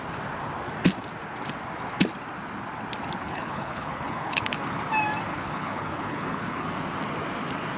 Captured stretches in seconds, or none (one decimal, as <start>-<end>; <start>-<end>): 0.0-3.2; 4.6-5.3; 6.7-7.8